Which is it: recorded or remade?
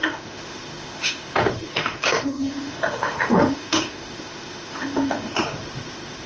remade